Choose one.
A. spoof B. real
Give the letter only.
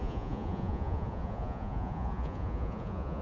A